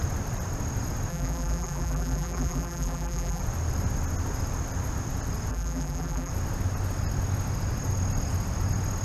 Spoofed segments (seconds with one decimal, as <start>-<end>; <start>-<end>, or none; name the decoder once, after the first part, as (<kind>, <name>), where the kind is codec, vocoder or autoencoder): 1.1-3.4 (vocoder, BigVGAN v2); 5.5-6.3